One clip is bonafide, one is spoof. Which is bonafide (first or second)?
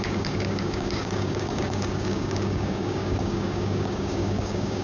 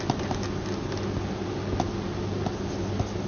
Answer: second